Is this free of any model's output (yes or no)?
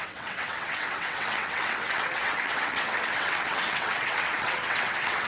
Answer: no